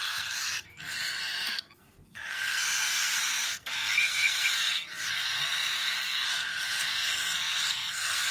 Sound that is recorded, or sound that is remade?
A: remade